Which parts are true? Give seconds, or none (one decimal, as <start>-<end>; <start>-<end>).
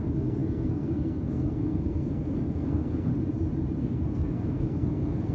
3.1-3.8